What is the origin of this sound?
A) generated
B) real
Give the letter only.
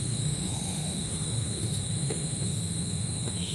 A